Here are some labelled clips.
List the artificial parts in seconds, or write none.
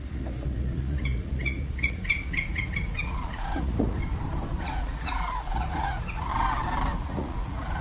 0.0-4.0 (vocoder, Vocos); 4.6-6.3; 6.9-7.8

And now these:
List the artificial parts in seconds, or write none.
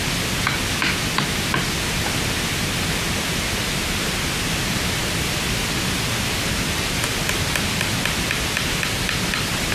none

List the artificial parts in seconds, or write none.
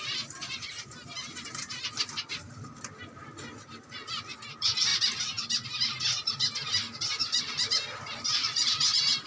none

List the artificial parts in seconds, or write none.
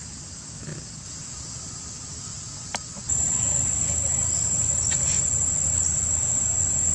none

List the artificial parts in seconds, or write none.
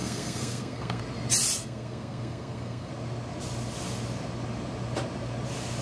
0.0-1.0 (codec, SNAC); 1.6-2.9